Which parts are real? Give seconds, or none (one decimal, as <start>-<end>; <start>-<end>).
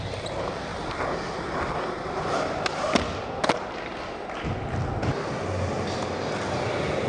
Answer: 0.0-7.1